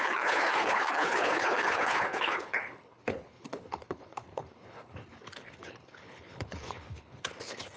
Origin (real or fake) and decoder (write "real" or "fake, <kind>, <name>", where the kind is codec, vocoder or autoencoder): fake, codec, HILCodec